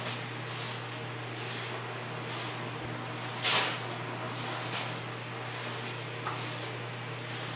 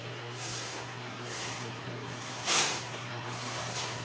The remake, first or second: second